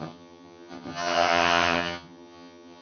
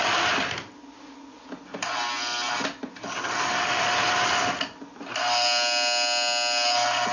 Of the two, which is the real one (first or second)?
second